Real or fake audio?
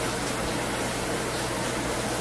real